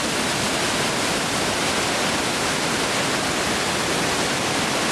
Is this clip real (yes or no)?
yes